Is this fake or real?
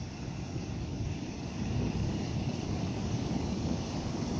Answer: fake